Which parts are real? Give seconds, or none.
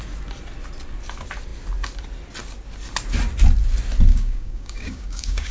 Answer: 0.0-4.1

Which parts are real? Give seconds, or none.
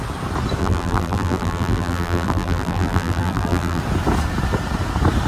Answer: 0.0-0.6; 3.8-5.3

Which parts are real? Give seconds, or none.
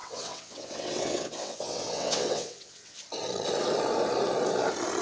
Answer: 3.0-5.0